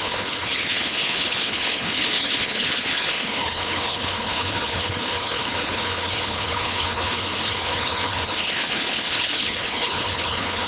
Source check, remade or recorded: remade